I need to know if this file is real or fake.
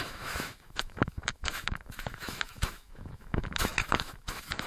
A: fake